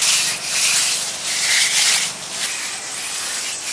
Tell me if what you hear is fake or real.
real